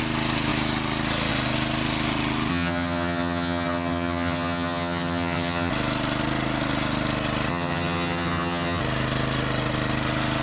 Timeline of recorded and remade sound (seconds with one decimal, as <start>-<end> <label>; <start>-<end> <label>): 0.0-2.5 recorded; 2.5-5.7 remade; 5.7-7.5 recorded; 7.5-8.8 remade; 8.8-10.4 recorded